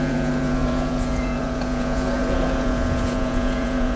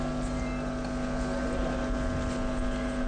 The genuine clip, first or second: second